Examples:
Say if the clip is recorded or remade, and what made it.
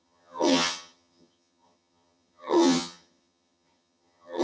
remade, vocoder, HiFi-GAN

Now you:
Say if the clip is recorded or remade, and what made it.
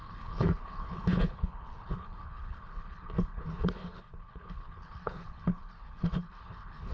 remade, codec, HILCodec